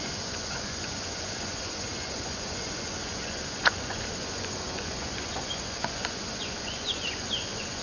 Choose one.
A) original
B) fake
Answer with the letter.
B